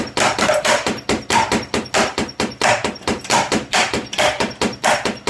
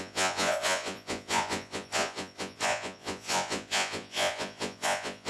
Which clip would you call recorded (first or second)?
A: first